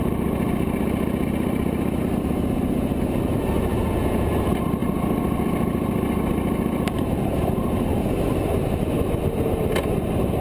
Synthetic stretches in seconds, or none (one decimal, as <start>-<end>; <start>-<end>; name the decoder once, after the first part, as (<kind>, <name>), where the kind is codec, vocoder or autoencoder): 3.7-4.3 (vocoder, Vocos)